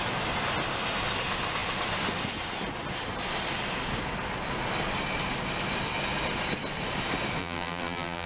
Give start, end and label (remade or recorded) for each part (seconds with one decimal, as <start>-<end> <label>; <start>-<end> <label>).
0.0-7.4 recorded; 7.4-8.3 remade